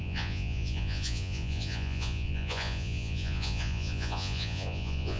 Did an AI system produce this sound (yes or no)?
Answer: yes